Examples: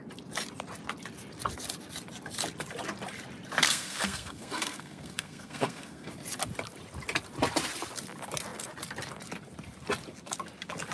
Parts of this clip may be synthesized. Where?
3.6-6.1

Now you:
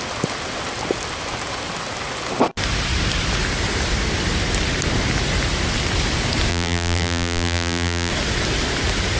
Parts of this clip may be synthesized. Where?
6.5-8.1